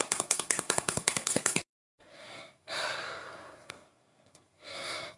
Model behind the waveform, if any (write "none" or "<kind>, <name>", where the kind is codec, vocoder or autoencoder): codec, SNAC